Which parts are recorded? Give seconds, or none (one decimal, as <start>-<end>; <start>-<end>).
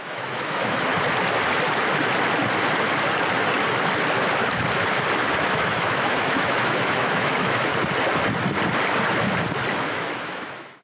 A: 0.9-5.4; 7.7-9.8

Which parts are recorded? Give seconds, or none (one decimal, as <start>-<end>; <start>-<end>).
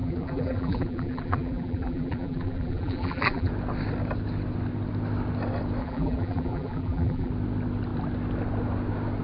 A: 3.5-5.8; 7.3-9.2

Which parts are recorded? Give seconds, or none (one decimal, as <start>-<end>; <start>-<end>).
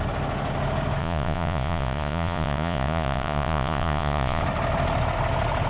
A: 0.0-1.0; 4.4-5.7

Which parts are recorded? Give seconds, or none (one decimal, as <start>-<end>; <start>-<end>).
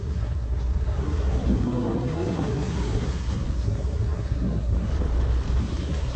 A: 4.9-5.6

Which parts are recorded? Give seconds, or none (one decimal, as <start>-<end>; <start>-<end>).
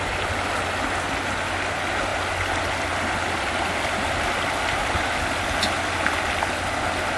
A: 0.0-7.2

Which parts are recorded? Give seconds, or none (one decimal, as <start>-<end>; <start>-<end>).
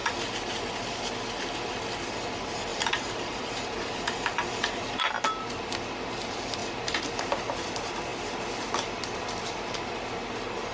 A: 0.0-2.7; 5.0-6.6; 7.2-10.7